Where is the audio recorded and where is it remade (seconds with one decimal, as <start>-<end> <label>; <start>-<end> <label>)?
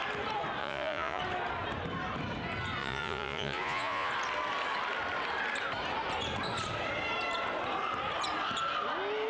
0.0-0.6 recorded; 0.6-1.2 remade; 1.2-2.8 recorded; 2.8-4.1 remade; 4.1-9.3 recorded